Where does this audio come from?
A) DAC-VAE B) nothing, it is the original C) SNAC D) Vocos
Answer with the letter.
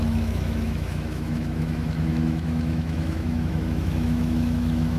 A